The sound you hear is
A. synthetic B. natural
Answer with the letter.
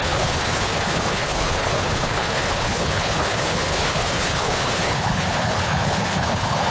A